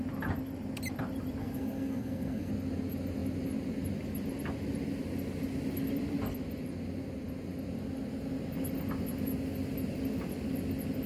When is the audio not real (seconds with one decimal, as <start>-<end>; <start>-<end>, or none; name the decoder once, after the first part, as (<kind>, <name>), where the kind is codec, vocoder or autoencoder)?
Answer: 1.4-2.5 (codec, SNAC)